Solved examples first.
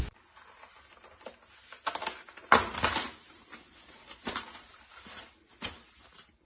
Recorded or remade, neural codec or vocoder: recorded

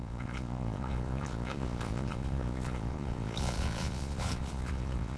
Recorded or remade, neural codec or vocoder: remade, vocoder, Vocos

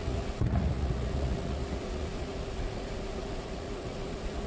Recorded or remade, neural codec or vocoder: remade, vocoder, Vocos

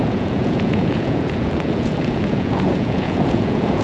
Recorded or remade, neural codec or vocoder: remade, vocoder, Vocos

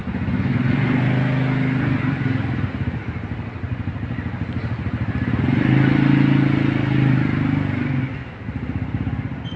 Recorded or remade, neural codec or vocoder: recorded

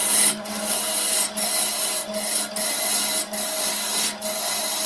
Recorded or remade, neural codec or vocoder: recorded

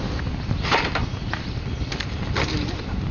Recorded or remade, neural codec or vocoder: recorded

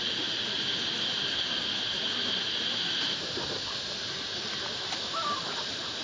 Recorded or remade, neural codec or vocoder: recorded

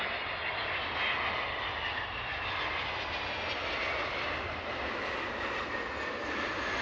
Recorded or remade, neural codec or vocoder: recorded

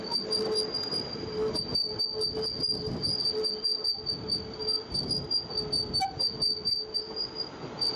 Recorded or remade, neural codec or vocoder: recorded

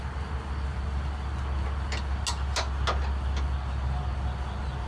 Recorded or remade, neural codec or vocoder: recorded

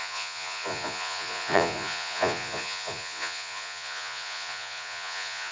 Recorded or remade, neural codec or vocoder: remade, vocoder, Vocos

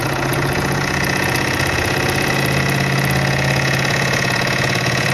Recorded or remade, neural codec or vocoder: remade, vocoder, Vocos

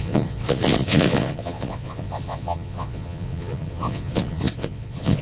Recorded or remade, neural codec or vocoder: remade, vocoder, Vocos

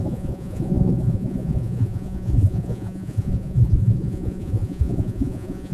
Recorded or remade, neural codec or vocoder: remade, vocoder, Vocos